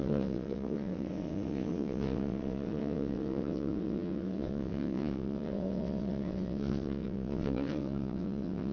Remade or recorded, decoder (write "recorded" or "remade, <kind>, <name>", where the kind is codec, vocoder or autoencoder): remade, vocoder, WaveNeXt